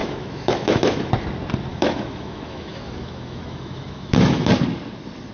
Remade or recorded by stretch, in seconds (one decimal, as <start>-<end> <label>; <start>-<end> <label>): 0.0-1.1 remade; 1.1-1.7 recorded; 1.7-4.5 remade; 4.5-5.3 recorded